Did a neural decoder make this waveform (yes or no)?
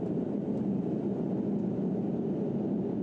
no